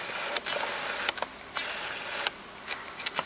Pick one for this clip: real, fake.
real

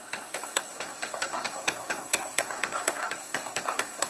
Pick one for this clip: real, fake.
fake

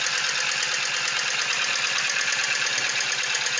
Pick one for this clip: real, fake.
real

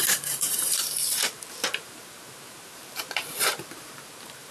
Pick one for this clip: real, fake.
fake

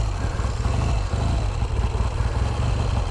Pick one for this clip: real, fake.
real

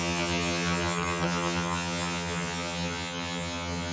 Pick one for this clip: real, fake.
fake